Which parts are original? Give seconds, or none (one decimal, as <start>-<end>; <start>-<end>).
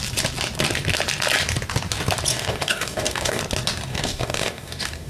0.0-2.3; 3.4-3.9